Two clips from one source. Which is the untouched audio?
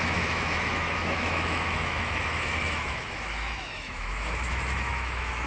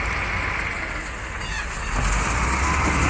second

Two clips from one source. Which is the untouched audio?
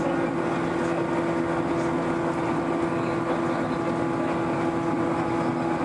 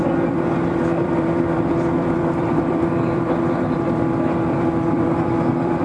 first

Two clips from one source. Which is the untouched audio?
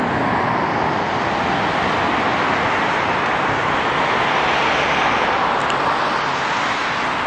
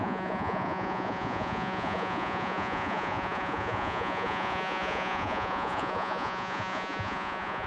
first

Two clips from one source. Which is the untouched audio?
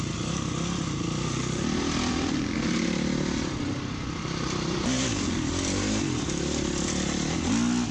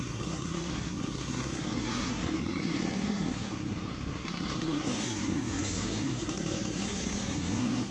first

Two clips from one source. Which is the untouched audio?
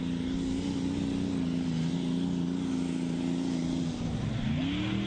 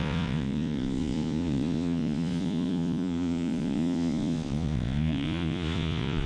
first